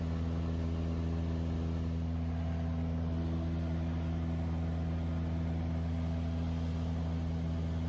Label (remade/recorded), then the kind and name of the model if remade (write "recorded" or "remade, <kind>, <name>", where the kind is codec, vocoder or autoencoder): recorded